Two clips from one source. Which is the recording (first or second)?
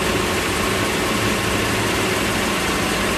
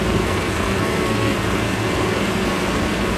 first